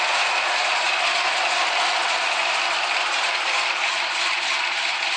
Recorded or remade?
recorded